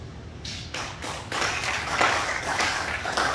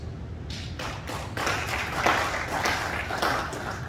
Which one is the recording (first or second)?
second